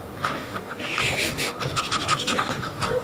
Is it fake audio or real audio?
fake